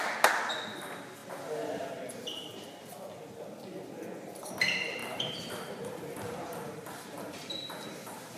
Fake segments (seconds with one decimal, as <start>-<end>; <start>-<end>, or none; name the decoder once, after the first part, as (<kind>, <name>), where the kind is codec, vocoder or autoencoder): 5.0-8.4 (vocoder, BigVGAN v2)